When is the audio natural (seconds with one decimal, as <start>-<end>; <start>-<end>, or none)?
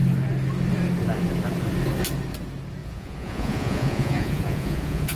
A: 0.0-2.8